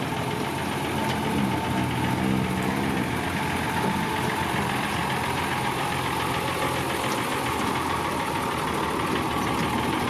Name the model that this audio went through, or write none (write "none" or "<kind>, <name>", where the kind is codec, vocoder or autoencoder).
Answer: none